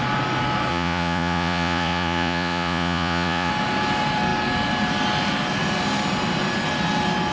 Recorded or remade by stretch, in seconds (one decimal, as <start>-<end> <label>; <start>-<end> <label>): 0.0-0.7 recorded; 0.7-3.5 remade; 3.5-7.3 recorded